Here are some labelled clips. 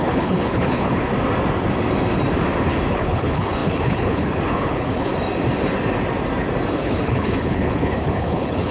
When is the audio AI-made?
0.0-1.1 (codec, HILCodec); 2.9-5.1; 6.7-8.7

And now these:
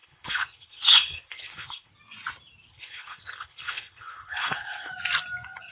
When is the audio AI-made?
0.0-1.9 (codec, HILCodec); 2.7-4.9

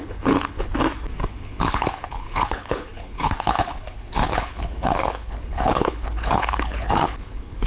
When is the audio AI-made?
0.0-0.7 (codec, HILCodec); 1.3-7.7